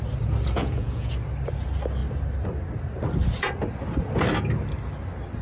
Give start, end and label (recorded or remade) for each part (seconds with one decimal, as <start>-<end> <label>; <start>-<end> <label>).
0.0-0.6 recorded; 0.6-1.1 remade; 1.1-5.4 recorded